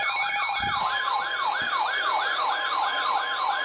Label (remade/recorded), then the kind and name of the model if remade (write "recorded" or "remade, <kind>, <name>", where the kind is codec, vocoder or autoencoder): remade, vocoder, BigVGAN v2